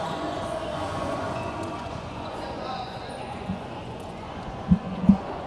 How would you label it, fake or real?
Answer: fake